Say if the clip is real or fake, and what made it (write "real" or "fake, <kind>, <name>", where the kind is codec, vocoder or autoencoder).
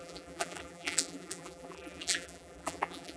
fake, vocoder, BigVGAN v2